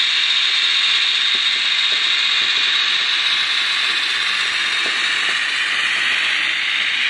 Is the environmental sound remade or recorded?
recorded